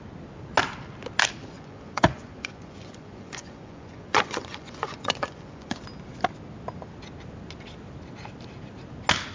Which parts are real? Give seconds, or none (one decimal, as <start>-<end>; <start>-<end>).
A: 0.0-1.4; 5.8-9.3